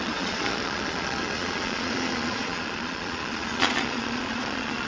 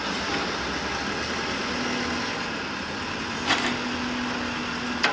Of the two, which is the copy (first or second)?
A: first